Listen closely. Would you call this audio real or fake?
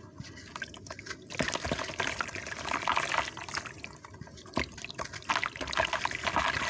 real